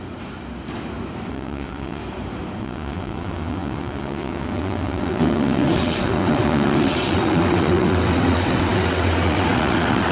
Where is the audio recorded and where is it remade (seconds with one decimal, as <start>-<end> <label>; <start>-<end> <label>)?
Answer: 0.0-1.3 recorded; 1.3-2.0 remade; 2.0-2.6 recorded; 2.6-10.1 remade